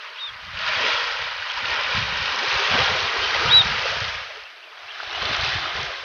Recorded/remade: recorded